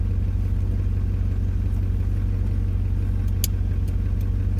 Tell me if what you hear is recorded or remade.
recorded